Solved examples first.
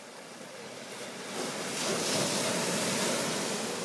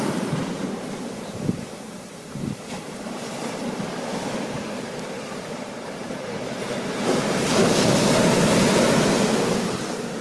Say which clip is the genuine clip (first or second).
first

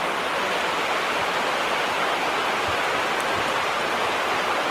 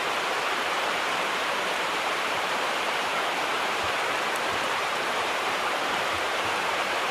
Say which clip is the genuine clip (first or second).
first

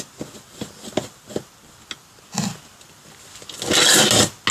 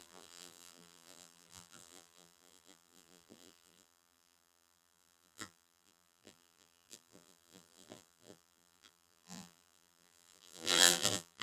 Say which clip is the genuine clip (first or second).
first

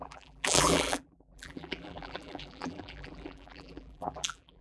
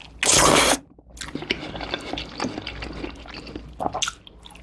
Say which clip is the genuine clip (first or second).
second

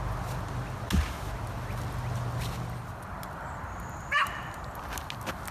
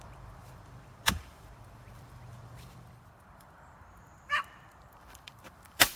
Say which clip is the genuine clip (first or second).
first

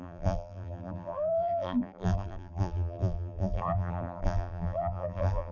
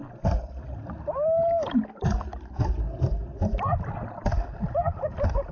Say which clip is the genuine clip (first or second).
second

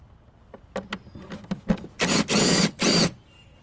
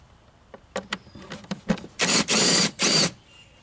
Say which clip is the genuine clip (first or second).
first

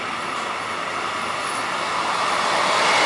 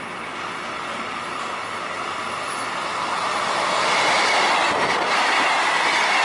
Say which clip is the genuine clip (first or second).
second